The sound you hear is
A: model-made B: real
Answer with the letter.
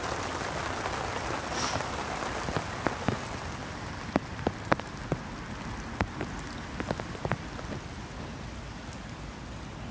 B